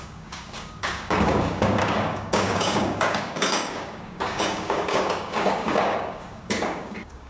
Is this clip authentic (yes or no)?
no